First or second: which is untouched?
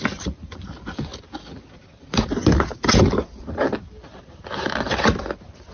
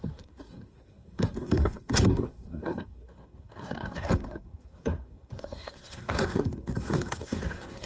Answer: first